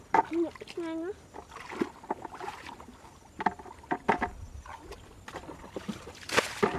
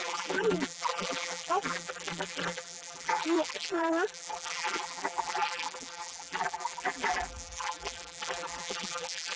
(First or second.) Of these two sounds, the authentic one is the first